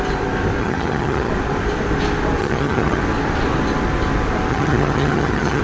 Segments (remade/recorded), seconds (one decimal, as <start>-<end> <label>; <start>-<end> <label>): 0.0-0.6 recorded; 0.6-1.3 remade; 1.3-2.4 recorded; 2.4-3.0 remade; 3.0-4.5 recorded; 4.5-5.6 remade